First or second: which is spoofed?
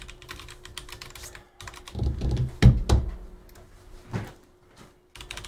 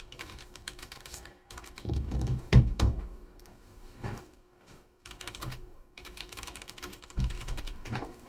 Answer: second